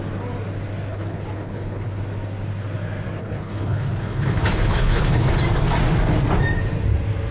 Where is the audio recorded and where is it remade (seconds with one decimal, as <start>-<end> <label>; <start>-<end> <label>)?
0.0-0.9 recorded; 0.9-2.0 remade; 2.0-3.2 recorded; 3.2-5.3 remade; 5.3-7.3 recorded